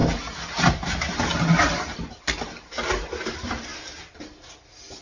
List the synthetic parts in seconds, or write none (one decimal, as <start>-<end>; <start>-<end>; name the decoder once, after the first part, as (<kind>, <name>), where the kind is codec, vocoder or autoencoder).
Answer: 0.7-1.3 (vocoder, BigVGAN v2); 2.0-3.7